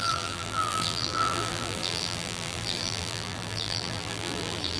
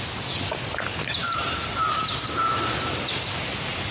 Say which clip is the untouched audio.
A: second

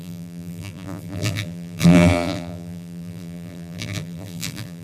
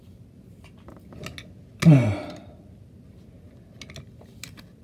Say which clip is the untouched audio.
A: second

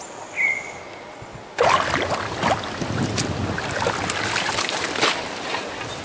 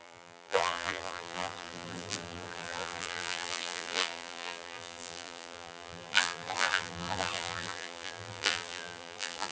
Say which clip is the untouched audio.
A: first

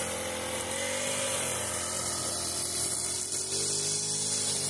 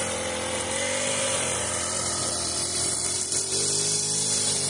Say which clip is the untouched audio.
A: first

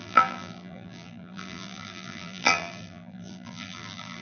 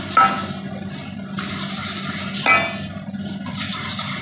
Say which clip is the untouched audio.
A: second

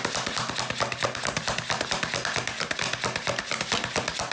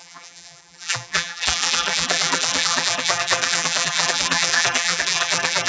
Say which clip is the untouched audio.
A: first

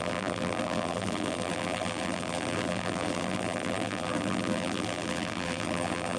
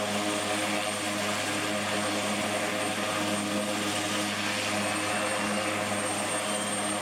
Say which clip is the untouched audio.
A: second